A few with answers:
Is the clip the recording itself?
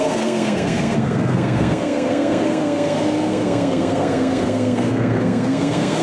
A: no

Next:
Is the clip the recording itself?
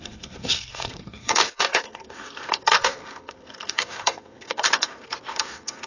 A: no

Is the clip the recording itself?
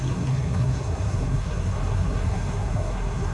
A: no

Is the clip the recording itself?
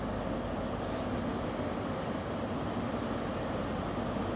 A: yes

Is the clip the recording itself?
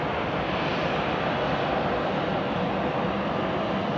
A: yes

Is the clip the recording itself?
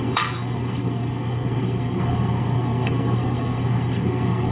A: no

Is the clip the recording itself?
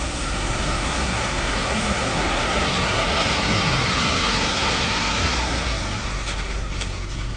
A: no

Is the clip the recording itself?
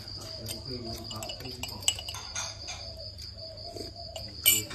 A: yes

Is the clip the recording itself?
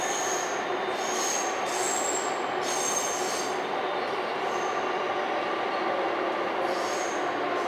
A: yes